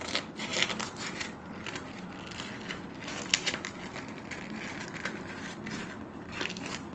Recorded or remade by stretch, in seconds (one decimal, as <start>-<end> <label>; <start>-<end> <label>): 0.0-6.9 recorded